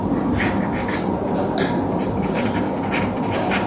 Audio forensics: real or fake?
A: real